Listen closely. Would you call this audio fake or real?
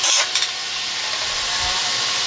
fake